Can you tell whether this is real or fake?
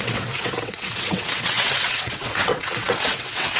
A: fake